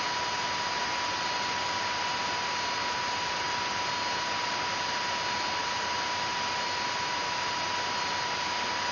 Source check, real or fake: real